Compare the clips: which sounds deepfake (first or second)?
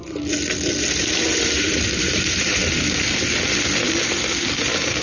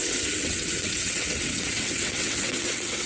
second